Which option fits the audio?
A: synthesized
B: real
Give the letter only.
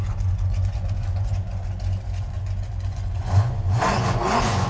A